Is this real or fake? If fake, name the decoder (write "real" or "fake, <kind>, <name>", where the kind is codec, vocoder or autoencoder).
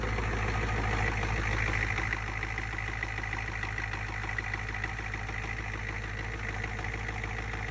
real